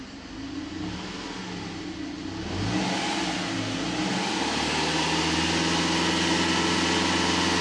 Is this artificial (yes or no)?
no